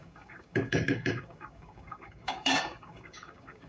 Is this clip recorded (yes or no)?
no